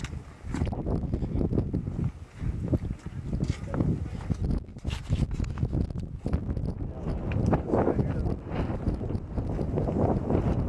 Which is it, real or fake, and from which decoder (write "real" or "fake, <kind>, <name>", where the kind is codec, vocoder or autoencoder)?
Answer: real